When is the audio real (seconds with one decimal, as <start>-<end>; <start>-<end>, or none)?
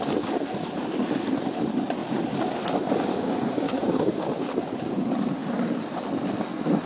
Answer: 0.0-3.1; 4.1-6.9